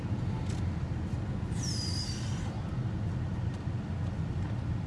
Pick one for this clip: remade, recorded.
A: recorded